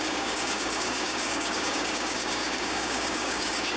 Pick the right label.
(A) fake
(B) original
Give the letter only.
A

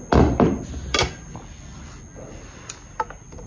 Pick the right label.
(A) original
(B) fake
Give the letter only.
A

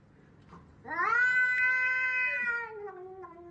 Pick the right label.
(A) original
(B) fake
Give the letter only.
A